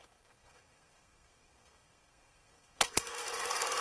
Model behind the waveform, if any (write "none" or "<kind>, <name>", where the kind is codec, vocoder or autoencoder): codec, SNAC